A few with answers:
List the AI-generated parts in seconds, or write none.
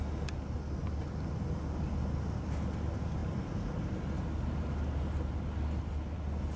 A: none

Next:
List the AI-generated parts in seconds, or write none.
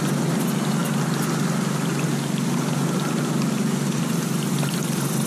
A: none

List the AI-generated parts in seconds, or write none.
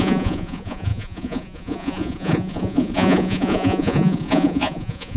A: 0.0-5.2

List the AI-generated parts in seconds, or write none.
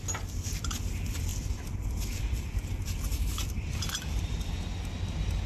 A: 1.3-4.6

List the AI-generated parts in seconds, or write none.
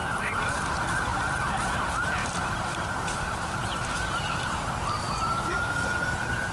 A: 0.0-0.6; 2.2-5.6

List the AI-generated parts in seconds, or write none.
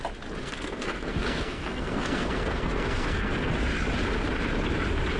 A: 0.4-3.5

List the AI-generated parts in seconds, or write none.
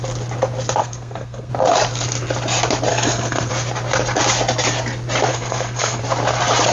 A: 0.8-1.5; 2.9-3.5; 5.3-6.0